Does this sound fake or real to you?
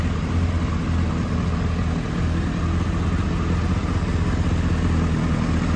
real